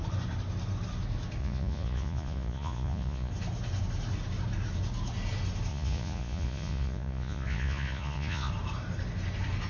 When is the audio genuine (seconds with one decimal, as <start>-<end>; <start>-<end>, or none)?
0.0-1.4; 3.3-5.7; 8.5-9.7